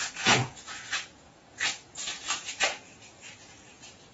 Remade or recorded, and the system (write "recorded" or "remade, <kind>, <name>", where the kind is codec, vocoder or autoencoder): remade, vocoder, Vocos